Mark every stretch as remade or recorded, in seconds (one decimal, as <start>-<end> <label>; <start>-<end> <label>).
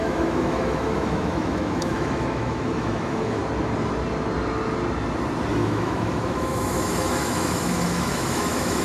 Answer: 0.0-3.4 remade; 3.4-5.5 recorded; 5.5-8.8 remade